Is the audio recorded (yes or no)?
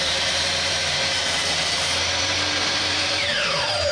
no